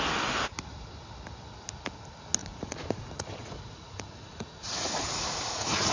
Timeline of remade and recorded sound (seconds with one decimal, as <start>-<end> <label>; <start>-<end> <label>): 0.0-2.4 recorded; 2.4-5.9 remade